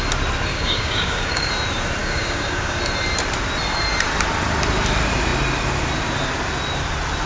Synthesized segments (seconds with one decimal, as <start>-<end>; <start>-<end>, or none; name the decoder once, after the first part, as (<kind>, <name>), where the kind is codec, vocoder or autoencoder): 0.5-1.5 (codec, DAC); 2.0-2.8